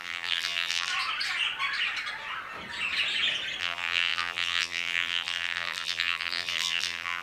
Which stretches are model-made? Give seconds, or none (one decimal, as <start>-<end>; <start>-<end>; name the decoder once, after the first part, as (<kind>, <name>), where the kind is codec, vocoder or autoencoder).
0.0-0.9 (vocoder, BigVGAN v2); 3.6-7.2

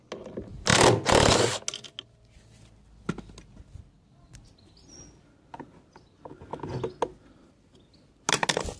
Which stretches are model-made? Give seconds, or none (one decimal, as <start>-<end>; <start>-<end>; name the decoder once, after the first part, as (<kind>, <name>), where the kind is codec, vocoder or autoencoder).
none

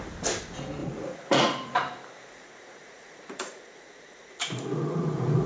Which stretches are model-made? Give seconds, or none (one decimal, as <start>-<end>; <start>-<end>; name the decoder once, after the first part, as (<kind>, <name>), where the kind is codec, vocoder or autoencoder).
0.8-1.7 (vocoder, Vocos); 2.2-5.5

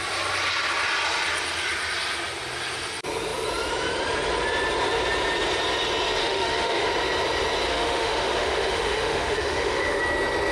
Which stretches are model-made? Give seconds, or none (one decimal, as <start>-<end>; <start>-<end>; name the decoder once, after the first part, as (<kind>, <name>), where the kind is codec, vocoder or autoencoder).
6.2-6.9 (autoencoder, DAC-VAE); 7.7-10.0